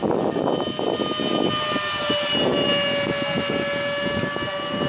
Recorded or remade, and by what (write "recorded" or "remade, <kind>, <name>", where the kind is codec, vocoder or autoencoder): recorded